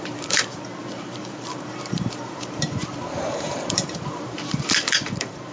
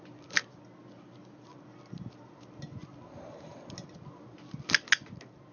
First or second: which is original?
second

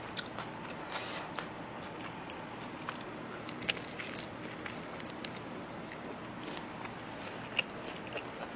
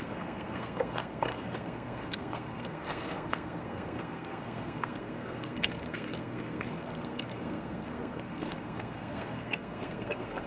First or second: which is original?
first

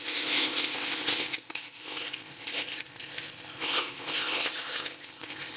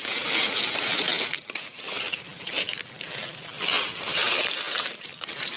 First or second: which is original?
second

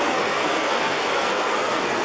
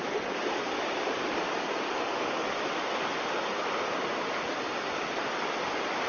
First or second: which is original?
second